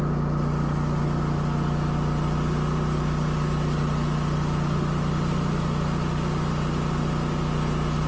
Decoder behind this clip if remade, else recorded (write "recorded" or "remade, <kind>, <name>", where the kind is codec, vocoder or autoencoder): recorded